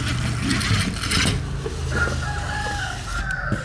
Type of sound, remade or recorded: recorded